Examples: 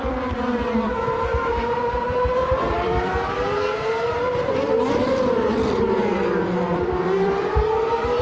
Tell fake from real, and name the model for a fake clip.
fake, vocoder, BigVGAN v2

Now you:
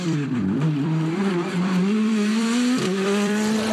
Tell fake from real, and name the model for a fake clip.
fake, vocoder, BigVGAN v2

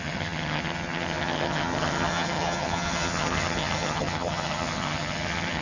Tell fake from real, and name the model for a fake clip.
fake, vocoder, HiFi-GAN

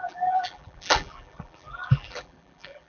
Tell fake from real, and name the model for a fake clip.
fake, vocoder, BigVGAN v2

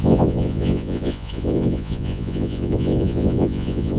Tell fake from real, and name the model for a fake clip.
fake, vocoder, Vocos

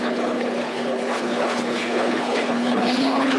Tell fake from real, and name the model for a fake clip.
fake, codec, HILCodec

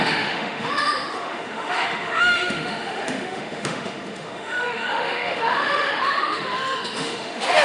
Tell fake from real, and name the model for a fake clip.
fake, autoencoder, DAC-VAE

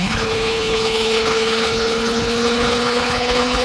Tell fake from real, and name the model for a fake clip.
fake, codec, HILCodec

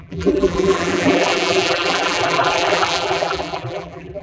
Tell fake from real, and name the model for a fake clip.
fake, vocoder, BigVGAN v2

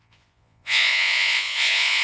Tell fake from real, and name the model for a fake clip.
fake, vocoder, Vocos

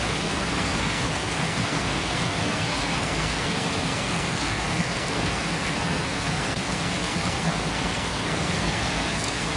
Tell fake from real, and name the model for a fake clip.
fake, codec, SNAC